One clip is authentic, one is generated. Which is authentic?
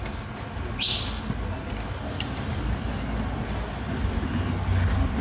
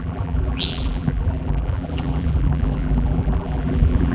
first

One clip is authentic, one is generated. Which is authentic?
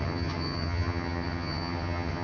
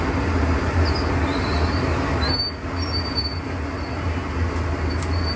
second